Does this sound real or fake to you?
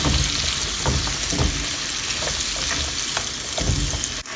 real